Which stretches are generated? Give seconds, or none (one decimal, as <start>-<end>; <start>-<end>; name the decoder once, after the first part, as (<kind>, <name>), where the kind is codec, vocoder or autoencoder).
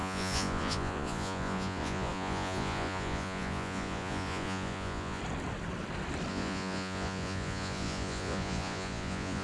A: 0.0-5.2 (vocoder, Vocos); 6.3-9.4